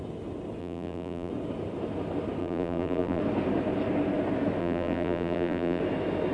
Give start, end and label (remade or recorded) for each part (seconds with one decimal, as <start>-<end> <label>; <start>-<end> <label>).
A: 0.0-0.6 recorded; 0.6-1.3 remade; 1.3-2.4 recorded; 2.4-3.2 remade; 3.2-4.6 recorded; 4.6-5.8 remade; 5.8-6.3 recorded